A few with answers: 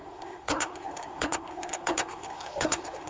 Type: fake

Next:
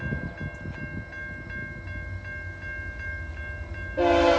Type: real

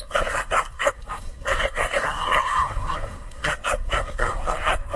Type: fake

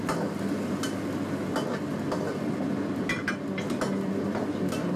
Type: real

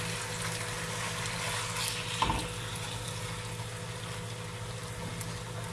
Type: real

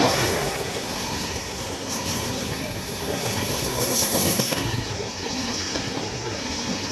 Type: fake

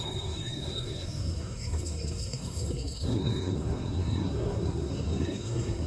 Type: fake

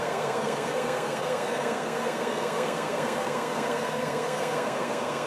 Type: fake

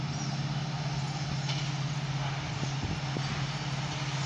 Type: real